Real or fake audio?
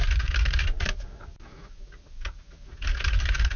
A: real